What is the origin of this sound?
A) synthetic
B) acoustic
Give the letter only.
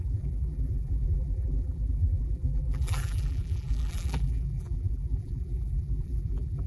A